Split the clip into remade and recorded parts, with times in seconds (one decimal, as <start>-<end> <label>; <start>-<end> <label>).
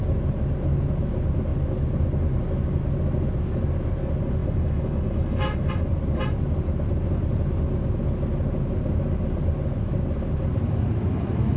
0.0-4.4 recorded; 4.4-5.7 remade; 5.7-11.6 recorded